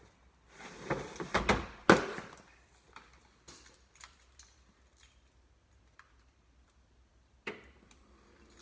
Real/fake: real